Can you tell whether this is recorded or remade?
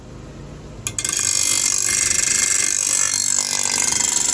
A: recorded